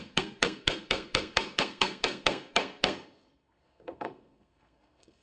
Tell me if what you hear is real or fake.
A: fake